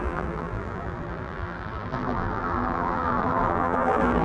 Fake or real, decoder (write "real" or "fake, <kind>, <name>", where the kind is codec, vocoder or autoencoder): fake, vocoder, BigVGAN v2